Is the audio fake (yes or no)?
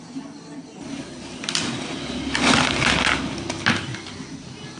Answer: no